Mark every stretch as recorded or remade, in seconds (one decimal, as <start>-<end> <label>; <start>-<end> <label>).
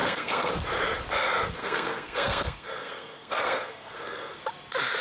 0.0-0.5 remade; 0.5-1.6 recorded; 1.6-4.4 remade; 4.4-5.0 recorded